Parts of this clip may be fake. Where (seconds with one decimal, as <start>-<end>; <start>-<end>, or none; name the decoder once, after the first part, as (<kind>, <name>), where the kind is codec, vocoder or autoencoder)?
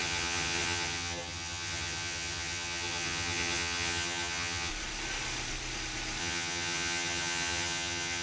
0.0-4.7 (vocoder, HiFi-GAN); 6.2-8.2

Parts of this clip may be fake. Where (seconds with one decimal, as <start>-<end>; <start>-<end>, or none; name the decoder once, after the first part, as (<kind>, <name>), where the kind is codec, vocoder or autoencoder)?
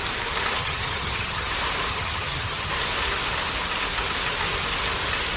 0.6-1.5 (vocoder, HiFi-GAN); 1.9-2.7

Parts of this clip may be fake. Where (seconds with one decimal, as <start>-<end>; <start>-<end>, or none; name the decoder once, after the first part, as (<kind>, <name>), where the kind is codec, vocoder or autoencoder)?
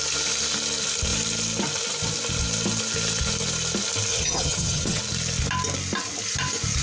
4.1-5.0 (vocoder, HiFi-GAN)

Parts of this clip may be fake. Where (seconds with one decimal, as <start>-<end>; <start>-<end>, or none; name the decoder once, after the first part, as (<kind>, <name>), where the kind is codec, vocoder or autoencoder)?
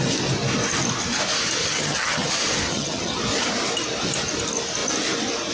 1.6-2.3 (vocoder, HiFi-GAN); 2.7-3.2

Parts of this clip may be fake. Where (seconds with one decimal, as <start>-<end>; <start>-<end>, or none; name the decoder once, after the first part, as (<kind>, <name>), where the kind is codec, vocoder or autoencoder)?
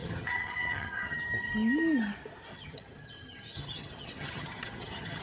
0.0-1.5 (vocoder, HiFi-GAN); 2.5-5.2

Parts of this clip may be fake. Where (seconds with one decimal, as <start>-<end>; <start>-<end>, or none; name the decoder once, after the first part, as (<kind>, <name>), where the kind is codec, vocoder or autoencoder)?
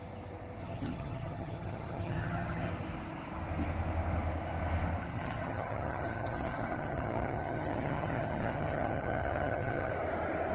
0.6-2.7 (vocoder, HiFi-GAN); 5.0-9.9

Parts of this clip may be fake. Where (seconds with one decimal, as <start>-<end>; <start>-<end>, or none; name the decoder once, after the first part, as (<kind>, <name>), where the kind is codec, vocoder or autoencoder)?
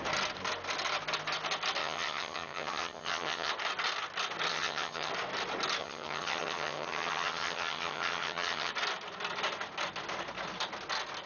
1.8-3.5 (vocoder, HiFi-GAN); 4.5-5.1; 5.8-8.7